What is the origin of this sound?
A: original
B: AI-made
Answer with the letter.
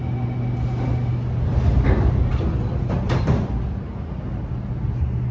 A